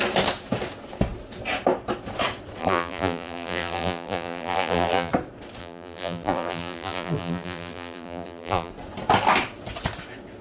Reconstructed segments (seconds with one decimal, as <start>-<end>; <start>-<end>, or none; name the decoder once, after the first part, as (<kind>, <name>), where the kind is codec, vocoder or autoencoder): 2.6-5.1 (vocoder, BigVGAN v2); 5.6-8.7